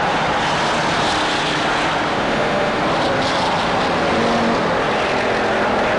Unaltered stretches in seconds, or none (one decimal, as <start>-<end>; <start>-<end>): 0.0-2.1; 2.8-6.0

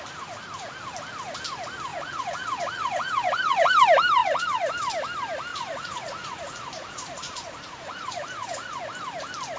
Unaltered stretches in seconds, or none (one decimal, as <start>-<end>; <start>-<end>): 0.0-1.9; 3.7-4.2; 4.7-5.5; 8.8-9.6

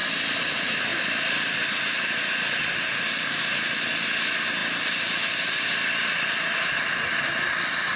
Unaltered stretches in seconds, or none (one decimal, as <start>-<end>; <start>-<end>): 0.0-8.0

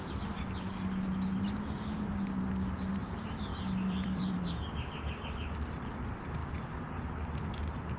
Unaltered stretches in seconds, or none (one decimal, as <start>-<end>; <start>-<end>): 0.0-3.5; 4.4-8.0

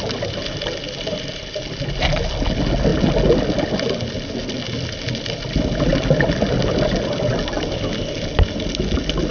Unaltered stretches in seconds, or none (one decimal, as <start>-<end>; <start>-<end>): 0.0-9.3

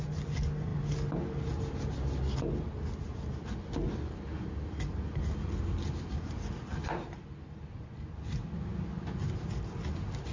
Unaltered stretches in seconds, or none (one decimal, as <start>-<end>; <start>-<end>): 0.0-10.3

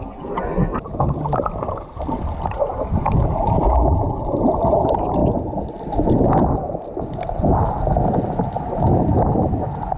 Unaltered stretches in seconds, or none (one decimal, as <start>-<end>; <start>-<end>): 0.0-10.0